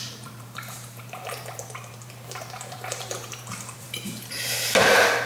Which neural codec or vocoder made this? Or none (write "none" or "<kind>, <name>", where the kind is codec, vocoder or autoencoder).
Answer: vocoder, BigVGAN v2